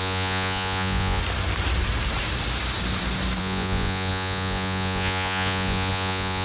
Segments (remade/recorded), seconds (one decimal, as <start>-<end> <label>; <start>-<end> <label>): 0.0-1.2 remade; 1.2-3.4 recorded; 3.4-6.4 remade